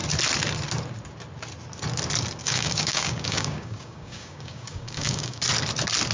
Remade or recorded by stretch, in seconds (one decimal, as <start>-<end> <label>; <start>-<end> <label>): 0.0-2.4 recorded; 2.4-5.4 remade; 5.4-6.1 recorded